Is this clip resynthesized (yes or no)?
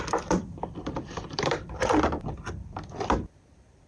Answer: yes